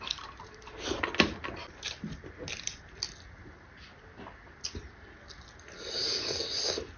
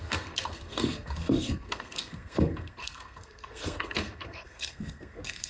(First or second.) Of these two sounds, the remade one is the second